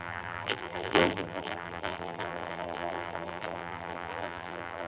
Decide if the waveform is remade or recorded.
remade